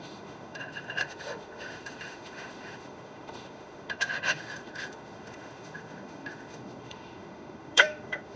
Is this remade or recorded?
remade